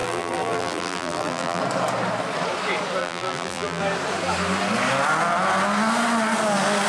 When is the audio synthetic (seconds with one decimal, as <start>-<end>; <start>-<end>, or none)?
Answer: 0.0-1.6; 3.0-3.8